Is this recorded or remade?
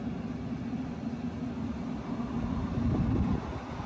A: recorded